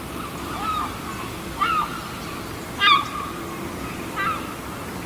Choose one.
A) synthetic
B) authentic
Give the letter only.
B